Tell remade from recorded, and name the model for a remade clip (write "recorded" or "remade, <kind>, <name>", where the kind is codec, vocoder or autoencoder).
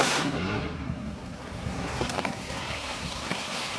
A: remade, codec, SNAC